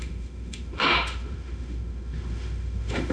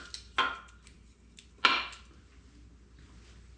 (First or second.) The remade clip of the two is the first